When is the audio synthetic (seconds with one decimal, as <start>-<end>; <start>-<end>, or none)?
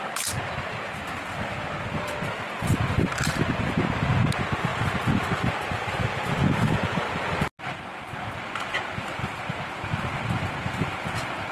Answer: 4.7-7.5